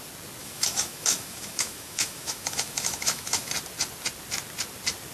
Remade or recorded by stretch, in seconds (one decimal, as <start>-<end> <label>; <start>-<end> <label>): 0.0-0.4 recorded; 0.4-3.5 remade; 3.5-5.1 recorded